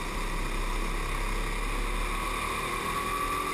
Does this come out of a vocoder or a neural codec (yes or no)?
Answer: no